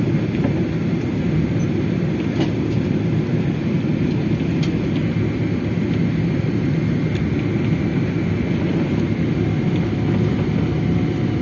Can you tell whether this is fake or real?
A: real